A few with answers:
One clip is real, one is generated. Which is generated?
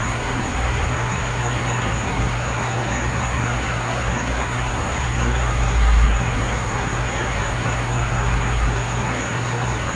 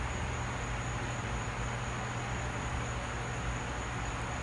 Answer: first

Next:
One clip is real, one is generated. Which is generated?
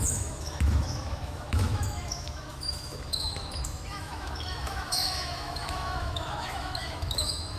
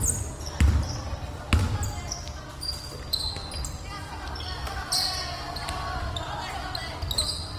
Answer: first